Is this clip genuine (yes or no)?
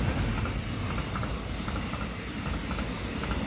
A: yes